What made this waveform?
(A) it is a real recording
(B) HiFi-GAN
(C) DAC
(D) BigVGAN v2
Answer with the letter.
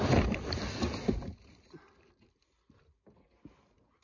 A